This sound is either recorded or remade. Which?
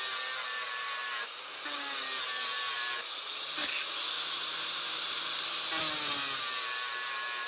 recorded